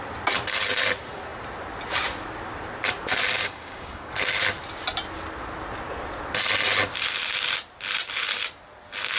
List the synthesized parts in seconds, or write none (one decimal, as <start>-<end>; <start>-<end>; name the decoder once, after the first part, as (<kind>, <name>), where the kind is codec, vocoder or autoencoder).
3.4-4.1 (codec, DAC)